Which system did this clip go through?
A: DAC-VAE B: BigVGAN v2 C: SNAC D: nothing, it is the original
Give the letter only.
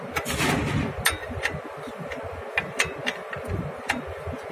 D